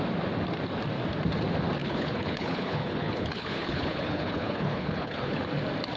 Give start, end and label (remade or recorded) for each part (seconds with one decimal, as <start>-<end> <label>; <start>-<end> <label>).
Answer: 0.0-1.8 recorded; 1.8-5.4 remade; 5.4-6.0 recorded

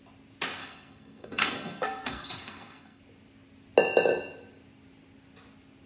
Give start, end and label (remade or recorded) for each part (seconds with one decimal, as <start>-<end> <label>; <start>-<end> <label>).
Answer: 0.0-0.6 recorded; 0.6-3.0 remade; 3.0-5.9 recorded